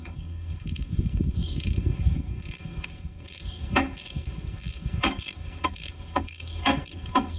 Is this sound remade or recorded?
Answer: remade